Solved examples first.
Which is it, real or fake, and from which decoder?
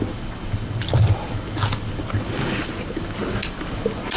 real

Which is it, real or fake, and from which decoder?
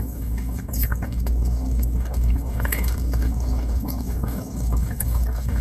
fake, codec, DAC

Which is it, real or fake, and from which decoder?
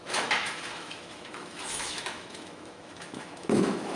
fake, autoencoder, DAC-VAE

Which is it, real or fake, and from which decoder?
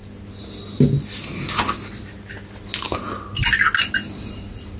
real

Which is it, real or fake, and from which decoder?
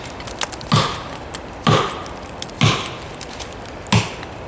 real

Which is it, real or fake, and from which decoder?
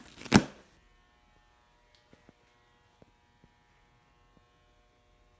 real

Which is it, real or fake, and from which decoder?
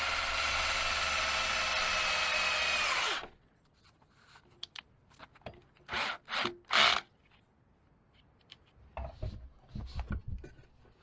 real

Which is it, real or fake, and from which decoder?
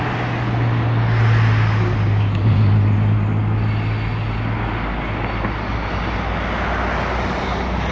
real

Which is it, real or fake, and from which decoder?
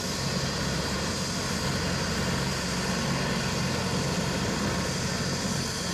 real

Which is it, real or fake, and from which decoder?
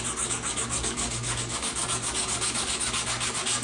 fake, codec, DAC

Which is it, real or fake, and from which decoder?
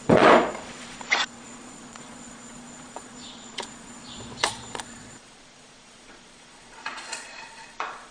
fake, vocoder, Vocos